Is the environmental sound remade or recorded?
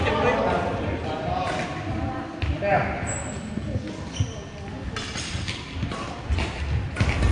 recorded